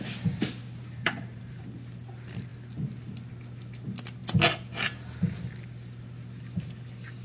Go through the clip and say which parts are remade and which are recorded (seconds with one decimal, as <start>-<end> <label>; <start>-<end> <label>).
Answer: 0.0-0.6 recorded; 0.6-1.6 remade; 1.6-7.2 recorded

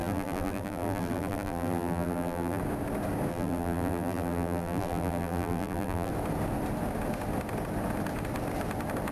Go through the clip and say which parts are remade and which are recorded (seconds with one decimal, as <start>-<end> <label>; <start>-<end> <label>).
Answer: 0.0-2.6 remade; 2.6-3.3 recorded; 3.3-6.1 remade; 6.1-9.1 recorded

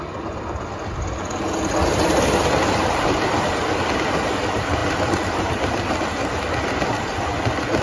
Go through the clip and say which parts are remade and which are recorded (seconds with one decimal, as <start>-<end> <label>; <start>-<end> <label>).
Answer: 0.0-7.8 recorded

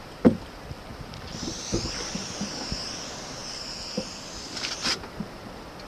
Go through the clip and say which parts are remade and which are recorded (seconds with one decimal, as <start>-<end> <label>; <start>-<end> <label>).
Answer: 0.0-0.9 recorded; 0.9-1.5 remade; 1.5-4.9 recorded; 4.9-5.4 remade; 5.4-5.9 recorded